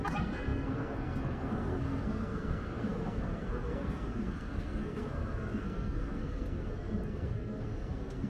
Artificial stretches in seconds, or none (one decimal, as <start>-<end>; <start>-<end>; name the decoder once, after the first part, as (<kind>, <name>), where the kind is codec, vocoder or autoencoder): 0.0-8.3 (codec, SNAC)